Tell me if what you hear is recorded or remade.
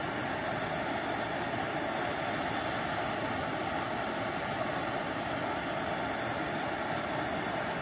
recorded